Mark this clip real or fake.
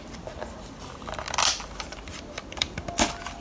fake